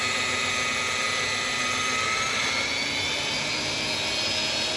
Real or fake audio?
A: real